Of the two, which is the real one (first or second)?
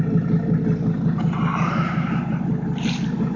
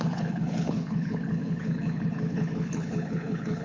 first